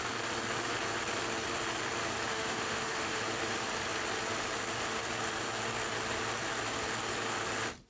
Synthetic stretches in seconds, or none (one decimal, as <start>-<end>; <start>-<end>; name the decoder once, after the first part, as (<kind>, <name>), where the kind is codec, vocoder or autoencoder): 2.3-3.2 (autoencoder, DAC-VAE)